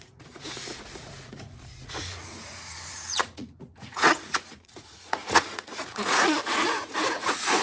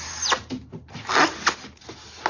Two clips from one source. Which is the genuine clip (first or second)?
second